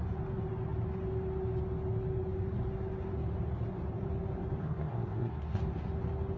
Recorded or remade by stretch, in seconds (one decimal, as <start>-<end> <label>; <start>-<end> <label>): 0.0-4.6 recorded; 4.6-5.6 remade; 5.6-6.4 recorded